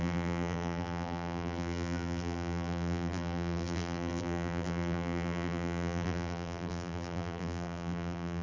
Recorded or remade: remade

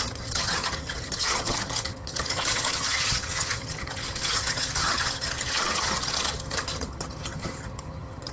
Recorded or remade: remade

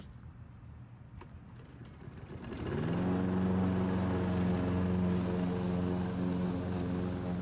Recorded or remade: recorded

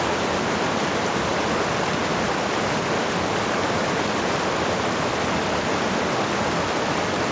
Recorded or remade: recorded